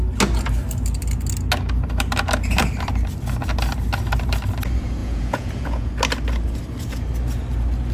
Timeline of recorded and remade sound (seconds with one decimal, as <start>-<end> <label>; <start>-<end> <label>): 0.0-5.0 recorded; 5.0-5.9 remade; 5.9-7.9 recorded